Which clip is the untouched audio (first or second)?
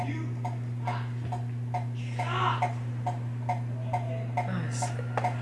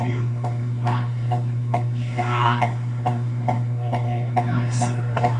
first